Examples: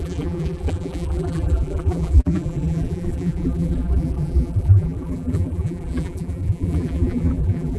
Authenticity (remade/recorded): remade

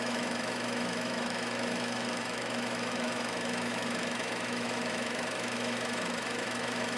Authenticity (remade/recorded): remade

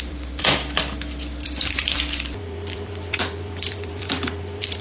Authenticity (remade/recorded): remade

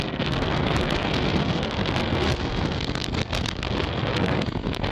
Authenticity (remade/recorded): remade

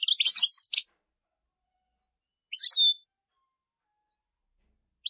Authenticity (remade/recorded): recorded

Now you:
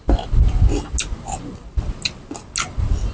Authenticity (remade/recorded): recorded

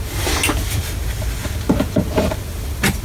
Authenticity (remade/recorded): recorded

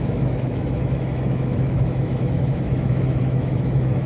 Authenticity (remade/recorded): remade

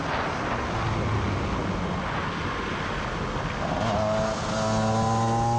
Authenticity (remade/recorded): recorded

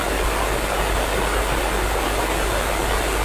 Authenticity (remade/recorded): recorded